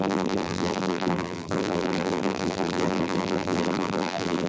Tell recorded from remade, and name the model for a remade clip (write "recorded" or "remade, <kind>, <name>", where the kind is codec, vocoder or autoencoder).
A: remade, vocoder, BigVGAN v2